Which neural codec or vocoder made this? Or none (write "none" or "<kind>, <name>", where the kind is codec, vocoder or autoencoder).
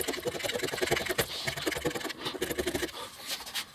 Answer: none